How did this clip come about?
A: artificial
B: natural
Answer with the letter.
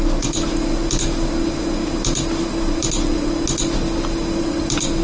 B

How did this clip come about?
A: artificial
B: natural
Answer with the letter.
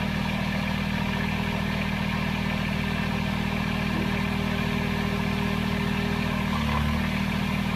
B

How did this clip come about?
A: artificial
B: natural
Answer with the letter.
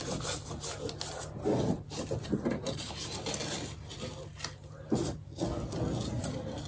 B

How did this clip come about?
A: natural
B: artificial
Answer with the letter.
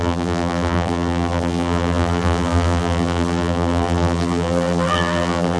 B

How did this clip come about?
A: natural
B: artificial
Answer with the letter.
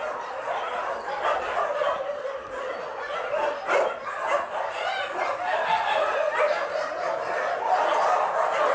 A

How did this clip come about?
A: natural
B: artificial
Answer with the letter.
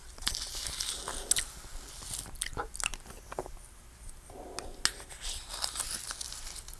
A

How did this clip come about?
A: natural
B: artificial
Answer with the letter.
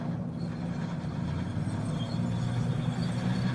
A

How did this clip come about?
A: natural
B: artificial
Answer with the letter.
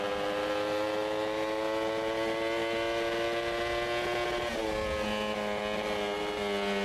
A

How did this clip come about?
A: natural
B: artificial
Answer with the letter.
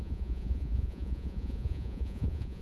B